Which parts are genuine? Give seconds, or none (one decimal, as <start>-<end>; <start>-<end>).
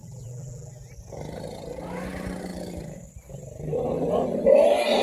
0.9-5.0